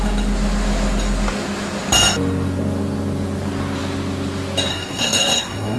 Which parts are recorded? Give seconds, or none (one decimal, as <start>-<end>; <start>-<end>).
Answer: 0.0-4.7